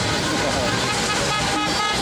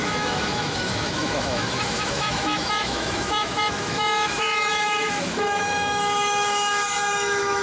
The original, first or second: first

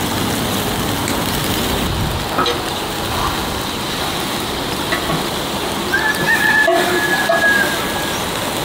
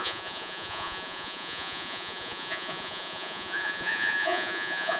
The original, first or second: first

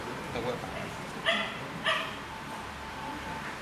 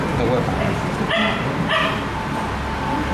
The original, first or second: second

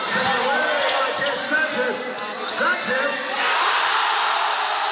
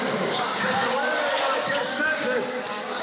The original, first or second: first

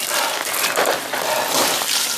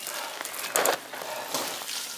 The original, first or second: second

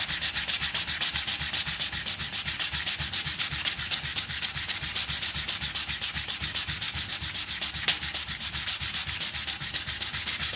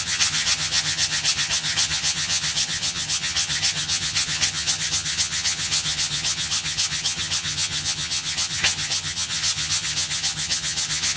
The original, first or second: first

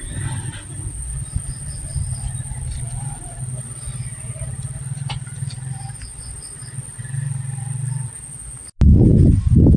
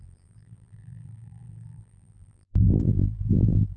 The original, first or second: first